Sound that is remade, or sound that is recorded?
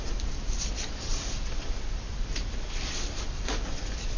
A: remade